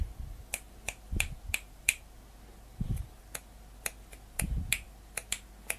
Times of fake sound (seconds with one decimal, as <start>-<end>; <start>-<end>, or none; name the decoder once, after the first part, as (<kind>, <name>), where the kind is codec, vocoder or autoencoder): 1.5-2.0 (vocoder, BigVGAN v2)